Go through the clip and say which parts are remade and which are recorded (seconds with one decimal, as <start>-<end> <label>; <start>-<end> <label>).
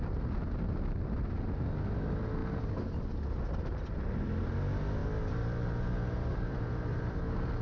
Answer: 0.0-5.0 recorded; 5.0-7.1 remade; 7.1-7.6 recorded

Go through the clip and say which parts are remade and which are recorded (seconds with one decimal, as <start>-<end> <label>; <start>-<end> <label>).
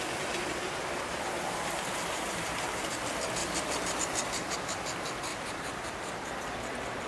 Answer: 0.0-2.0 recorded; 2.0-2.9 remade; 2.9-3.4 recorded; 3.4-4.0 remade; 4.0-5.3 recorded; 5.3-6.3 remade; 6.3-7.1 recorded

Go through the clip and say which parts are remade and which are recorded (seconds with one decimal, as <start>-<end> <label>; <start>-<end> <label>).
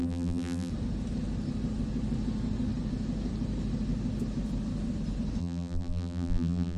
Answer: 0.0-0.7 remade; 0.7-5.4 recorded; 5.4-6.8 remade